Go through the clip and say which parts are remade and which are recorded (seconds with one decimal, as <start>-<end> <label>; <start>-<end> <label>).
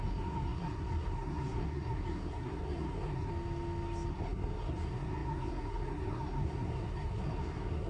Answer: 0.0-3.3 remade; 3.3-4.1 recorded; 4.1-7.9 remade